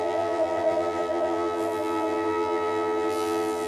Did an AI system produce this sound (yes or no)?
yes